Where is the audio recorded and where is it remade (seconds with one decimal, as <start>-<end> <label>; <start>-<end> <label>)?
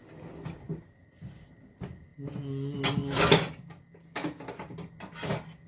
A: 0.0-5.7 recorded